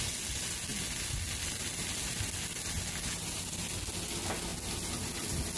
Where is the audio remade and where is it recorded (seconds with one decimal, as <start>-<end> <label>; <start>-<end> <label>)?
0.0-5.6 recorded

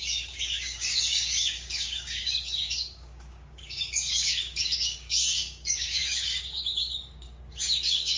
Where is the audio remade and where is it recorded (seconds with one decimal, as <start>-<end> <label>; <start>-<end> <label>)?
0.0-8.2 remade

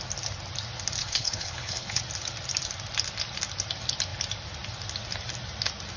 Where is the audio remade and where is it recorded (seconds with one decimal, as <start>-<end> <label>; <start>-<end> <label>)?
0.0-1.0 recorded; 1.0-2.0 remade; 2.0-6.0 recorded

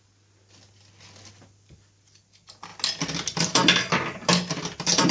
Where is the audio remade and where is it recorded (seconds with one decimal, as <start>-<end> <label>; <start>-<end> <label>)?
0.0-5.1 recorded